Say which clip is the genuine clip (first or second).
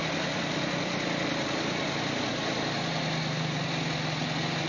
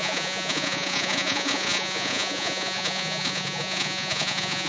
first